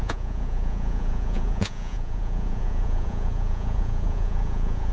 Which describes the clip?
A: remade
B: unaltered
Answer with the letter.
A